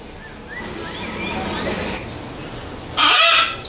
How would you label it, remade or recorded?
recorded